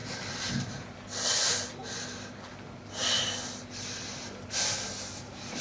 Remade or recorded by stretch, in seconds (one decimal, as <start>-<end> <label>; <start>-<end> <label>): 0.0-5.6 recorded

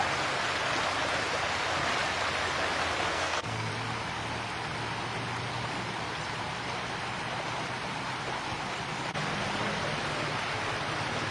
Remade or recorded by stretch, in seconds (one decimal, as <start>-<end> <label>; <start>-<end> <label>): 0.0-3.1 recorded; 3.1-3.7 remade; 3.7-11.3 recorded

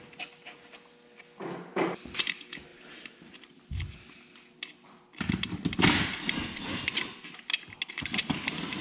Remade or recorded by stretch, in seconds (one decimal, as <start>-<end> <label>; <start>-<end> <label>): 0.0-2.7 recorded; 2.7-3.6 remade; 3.6-8.8 recorded

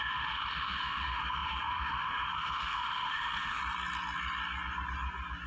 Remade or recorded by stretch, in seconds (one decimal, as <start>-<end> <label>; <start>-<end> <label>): 0.0-3.6 remade; 3.6-5.5 recorded

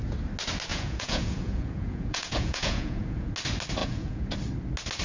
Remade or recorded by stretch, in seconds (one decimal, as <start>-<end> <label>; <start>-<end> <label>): 0.0-0.7 recorded; 0.7-3.3 remade; 3.3-3.8 recorded; 3.8-4.3 remade; 4.3-5.0 recorded

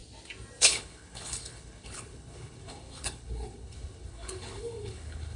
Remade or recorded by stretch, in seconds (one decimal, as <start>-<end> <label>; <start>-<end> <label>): 0.0-0.6 recorded; 0.6-5.4 remade

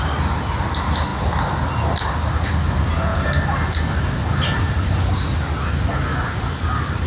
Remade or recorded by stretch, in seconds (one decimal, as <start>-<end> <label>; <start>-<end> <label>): 0.0-7.1 recorded

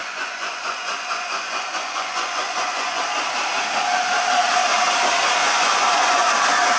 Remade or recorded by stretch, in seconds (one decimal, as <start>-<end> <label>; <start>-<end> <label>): 0.0-3.0 remade; 3.0-5.4 recorded; 5.4-6.3 remade; 6.3-6.8 recorded